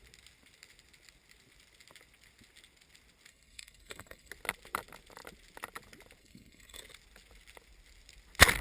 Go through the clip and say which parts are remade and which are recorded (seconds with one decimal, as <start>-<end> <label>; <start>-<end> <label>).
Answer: 0.0-3.3 recorded; 3.3-4.3 remade; 4.3-6.2 recorded; 6.2-6.8 remade; 6.8-8.6 recorded